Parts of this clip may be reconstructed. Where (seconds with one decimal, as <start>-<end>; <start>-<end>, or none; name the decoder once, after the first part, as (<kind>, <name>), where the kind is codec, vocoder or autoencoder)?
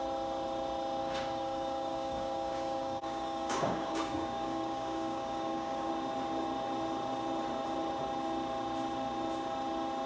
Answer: 1.0-5.9 (codec, DAC)